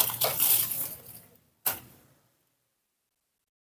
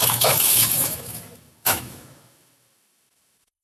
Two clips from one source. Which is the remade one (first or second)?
second